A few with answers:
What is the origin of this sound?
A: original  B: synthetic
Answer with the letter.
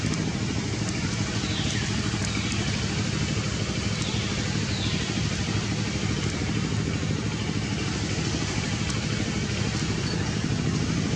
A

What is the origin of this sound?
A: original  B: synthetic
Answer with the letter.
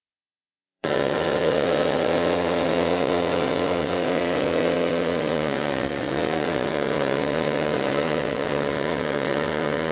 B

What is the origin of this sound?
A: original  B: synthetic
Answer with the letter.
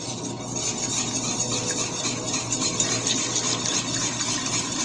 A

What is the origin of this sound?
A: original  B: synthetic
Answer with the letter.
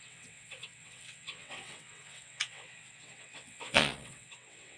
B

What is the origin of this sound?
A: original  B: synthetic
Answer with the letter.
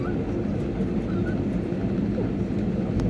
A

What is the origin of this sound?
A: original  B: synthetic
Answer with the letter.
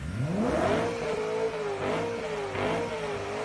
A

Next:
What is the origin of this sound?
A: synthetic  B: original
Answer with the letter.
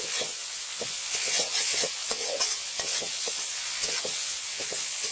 A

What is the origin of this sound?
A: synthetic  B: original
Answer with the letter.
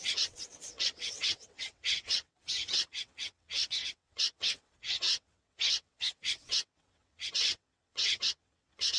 A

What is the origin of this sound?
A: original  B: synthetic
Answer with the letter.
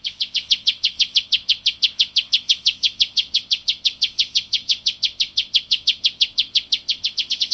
B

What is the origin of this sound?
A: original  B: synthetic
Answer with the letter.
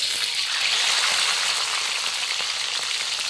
A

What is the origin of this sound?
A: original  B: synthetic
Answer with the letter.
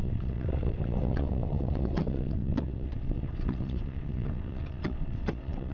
B